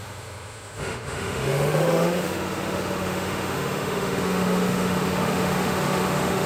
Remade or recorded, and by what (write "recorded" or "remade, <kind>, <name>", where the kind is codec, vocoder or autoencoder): remade, autoencoder, DAC-VAE